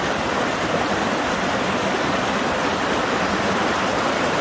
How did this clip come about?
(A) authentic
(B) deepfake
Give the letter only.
A